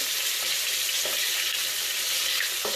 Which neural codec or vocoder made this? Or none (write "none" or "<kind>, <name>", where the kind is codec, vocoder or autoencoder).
none